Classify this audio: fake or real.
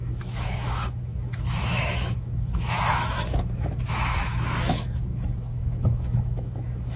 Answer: fake